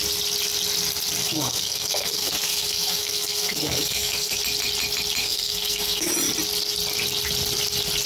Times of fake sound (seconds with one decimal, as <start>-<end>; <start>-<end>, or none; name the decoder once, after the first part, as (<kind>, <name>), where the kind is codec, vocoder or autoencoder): 1.2-4.4 (codec, SNAC); 5.2-6.1